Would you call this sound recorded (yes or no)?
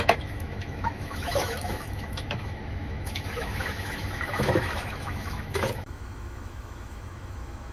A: no